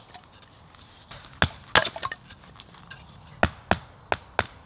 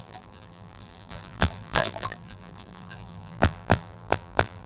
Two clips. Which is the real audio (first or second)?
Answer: first